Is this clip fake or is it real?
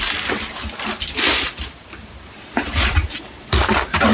real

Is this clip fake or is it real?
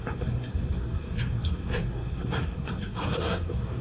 fake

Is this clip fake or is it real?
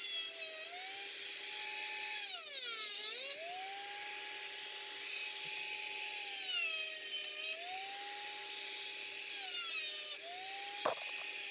real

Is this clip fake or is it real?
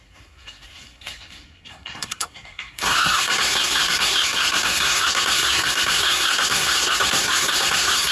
fake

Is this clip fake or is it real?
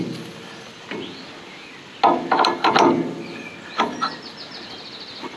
real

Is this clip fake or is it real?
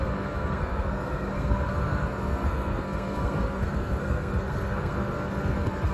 fake